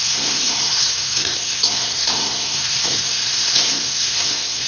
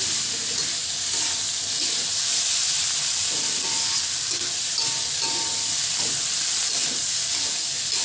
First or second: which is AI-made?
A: first